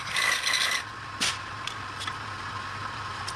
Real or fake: real